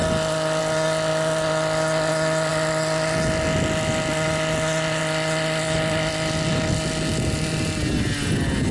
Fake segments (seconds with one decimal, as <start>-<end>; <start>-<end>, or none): none